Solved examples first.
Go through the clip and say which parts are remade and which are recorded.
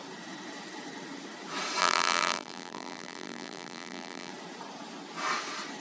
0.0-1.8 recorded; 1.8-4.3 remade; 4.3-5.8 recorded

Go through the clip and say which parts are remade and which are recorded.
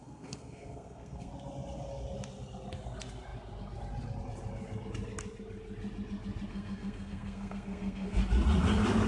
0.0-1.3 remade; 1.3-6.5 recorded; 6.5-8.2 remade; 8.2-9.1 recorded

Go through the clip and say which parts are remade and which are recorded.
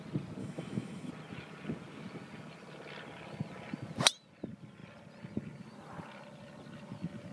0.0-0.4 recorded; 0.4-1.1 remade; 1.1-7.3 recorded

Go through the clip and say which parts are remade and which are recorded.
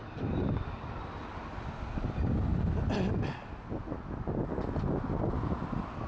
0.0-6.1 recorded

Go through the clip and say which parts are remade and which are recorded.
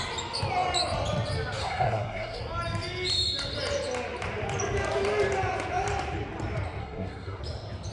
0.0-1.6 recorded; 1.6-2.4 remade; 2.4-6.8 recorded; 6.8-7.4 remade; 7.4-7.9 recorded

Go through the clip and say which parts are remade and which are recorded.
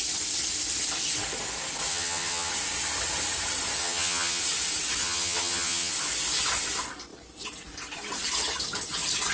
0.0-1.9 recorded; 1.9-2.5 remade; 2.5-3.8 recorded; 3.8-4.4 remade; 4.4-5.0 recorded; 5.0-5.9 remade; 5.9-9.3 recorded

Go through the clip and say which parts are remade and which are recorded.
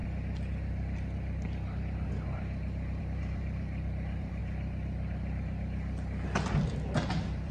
0.0-3.0 recorded; 3.0-4.4 remade; 4.4-7.1 recorded; 7.1-7.5 remade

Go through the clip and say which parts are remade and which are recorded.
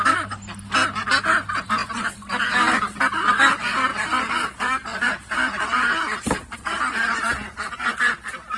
0.0-3.9 recorded; 3.9-5.1 remade; 5.1-8.6 recorded